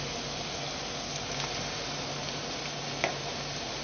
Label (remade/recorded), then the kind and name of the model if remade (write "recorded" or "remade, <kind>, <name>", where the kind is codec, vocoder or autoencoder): recorded